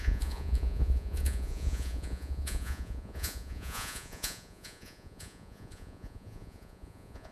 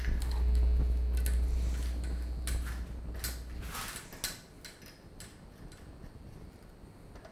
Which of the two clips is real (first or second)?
second